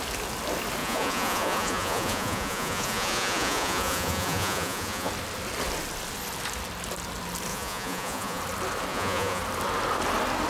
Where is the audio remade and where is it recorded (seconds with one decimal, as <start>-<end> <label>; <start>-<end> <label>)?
0.0-0.8 recorded; 0.8-5.1 remade; 5.1-7.5 recorded; 7.5-8.4 remade; 8.4-8.9 recorded; 8.9-9.4 remade; 9.4-10.5 recorded